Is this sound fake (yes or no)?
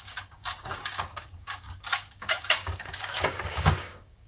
yes